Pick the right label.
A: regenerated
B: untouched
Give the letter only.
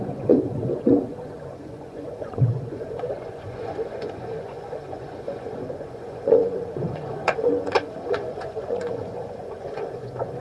A